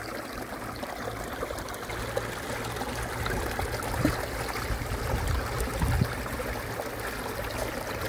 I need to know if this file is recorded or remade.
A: recorded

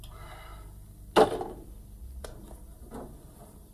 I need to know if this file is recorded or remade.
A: recorded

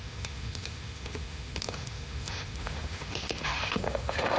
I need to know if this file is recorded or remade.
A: remade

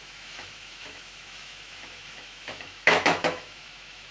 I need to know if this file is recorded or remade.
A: remade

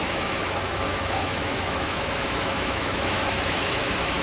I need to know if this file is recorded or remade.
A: remade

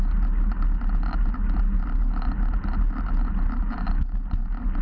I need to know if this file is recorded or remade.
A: recorded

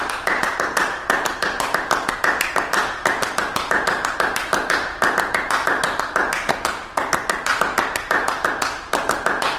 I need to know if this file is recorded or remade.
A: recorded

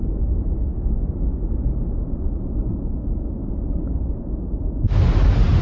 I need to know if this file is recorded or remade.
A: recorded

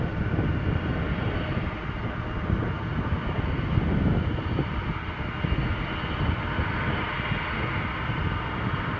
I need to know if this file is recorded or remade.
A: recorded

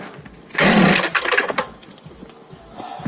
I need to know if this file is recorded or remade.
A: recorded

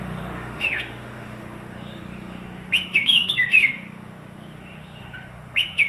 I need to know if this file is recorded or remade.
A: remade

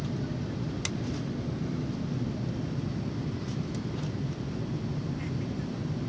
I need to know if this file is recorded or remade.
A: recorded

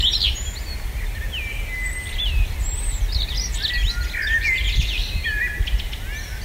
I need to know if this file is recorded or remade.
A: recorded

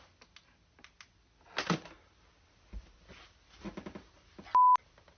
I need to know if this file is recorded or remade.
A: recorded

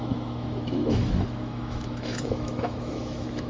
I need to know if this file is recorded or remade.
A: remade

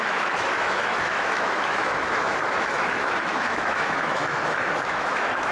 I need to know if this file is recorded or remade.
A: remade